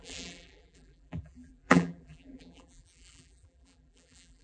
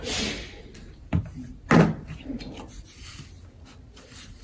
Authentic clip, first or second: second